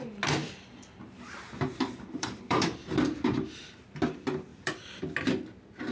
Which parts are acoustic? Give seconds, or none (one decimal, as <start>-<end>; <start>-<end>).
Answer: 0.0-0.4; 3.6-4.5; 5.0-5.9